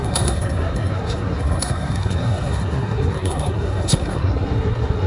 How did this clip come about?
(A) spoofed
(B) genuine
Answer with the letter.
A